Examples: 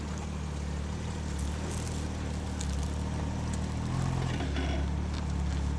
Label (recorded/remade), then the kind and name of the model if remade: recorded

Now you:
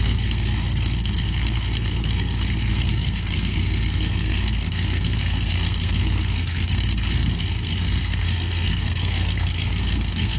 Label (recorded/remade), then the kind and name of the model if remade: remade, codec, SNAC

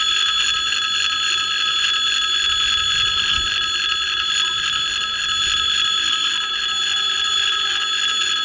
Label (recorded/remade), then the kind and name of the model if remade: recorded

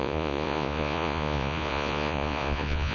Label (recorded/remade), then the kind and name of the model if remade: remade, vocoder, Vocos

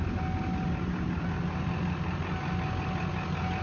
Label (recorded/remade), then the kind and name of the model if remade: recorded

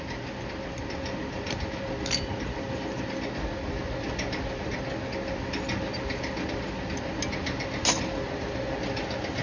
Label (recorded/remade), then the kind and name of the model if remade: recorded